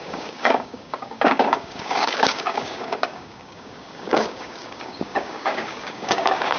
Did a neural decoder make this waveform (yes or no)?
yes